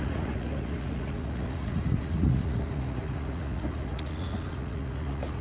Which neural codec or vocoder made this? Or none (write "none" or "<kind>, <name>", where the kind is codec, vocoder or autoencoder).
vocoder, Vocos